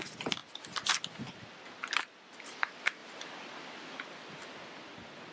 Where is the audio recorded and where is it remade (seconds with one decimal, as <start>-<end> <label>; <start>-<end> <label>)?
0.0-5.3 recorded